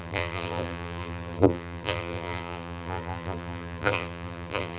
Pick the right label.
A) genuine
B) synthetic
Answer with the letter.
B